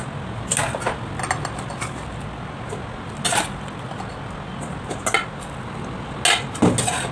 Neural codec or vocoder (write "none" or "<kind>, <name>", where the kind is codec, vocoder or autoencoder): none